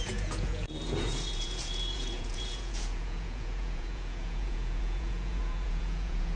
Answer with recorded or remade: remade